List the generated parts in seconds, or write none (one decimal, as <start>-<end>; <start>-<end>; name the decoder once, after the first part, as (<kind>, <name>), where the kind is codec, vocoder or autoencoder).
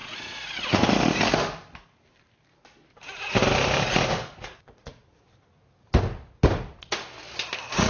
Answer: 0.0-0.8 (vocoder, Vocos); 4.2-5.2